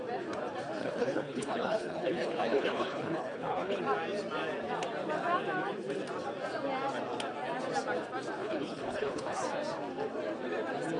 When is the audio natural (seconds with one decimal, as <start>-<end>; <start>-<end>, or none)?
0.0-0.8; 3.8-8.4; 9.4-11.0